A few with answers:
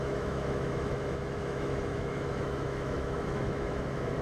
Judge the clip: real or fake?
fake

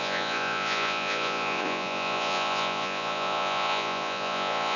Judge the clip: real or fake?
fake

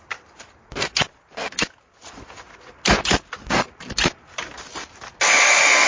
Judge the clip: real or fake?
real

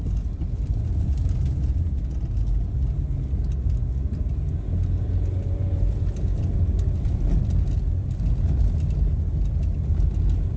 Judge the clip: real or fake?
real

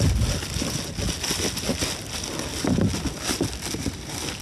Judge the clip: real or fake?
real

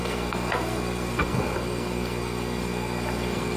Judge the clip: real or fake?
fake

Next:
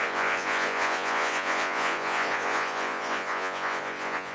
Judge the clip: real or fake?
fake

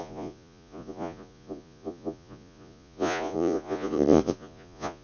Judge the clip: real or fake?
fake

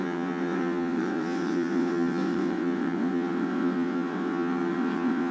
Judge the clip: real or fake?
fake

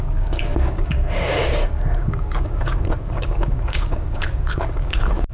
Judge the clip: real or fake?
fake